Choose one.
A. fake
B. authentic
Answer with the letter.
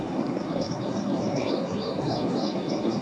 A